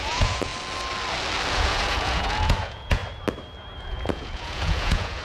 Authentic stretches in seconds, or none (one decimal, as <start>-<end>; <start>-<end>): 0.5-1.5; 3.0-3.8